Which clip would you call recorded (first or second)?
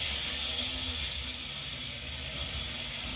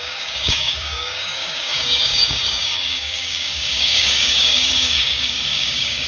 first